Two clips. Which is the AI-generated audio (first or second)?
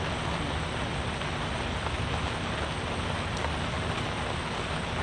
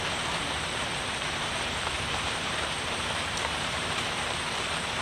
second